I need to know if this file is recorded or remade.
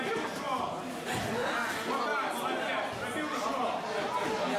recorded